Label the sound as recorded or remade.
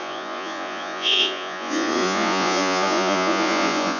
remade